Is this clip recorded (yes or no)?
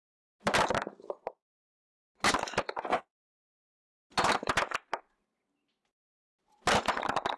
yes